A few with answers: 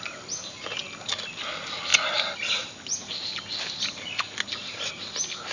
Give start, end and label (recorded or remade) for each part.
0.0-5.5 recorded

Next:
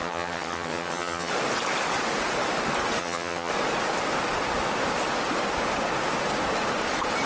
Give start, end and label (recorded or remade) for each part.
0.0-1.3 remade; 1.3-3.0 recorded; 3.0-3.5 remade; 3.5-7.3 recorded